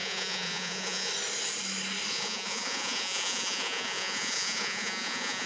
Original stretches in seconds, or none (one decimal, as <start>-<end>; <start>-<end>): 1.1-2.1